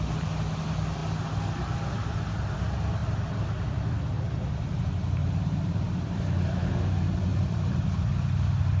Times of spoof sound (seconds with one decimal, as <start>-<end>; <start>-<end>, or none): 5.2-8.1